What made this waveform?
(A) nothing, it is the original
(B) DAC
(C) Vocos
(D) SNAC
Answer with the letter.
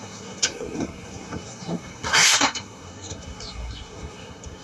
D